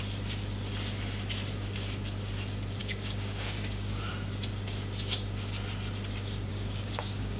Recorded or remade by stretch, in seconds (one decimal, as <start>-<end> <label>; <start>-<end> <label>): 0.0-2.8 recorded; 2.8-4.1 remade; 4.1-6.5 recorded; 6.5-7.4 remade